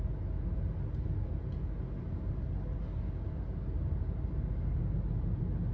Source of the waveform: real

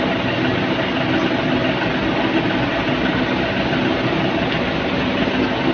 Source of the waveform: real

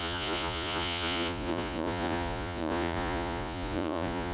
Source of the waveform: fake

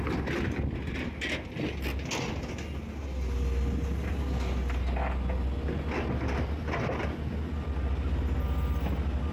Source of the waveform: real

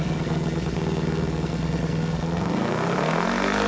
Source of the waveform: fake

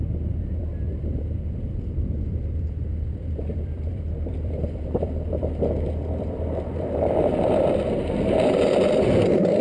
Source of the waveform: fake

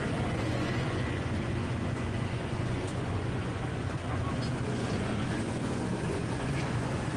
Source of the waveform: fake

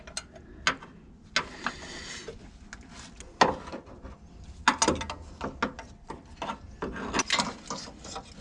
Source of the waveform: real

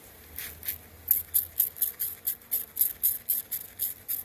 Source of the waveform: real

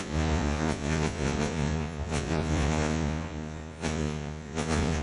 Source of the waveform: fake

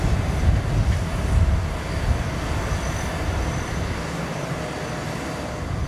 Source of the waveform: real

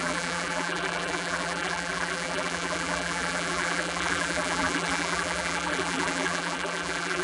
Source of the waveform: fake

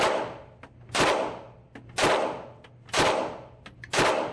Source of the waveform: real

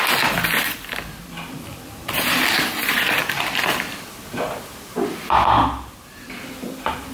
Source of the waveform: real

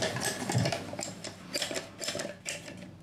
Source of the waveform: real